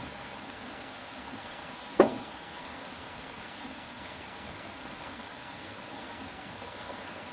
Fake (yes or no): yes